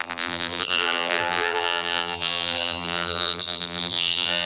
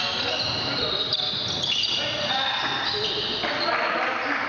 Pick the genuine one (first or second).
second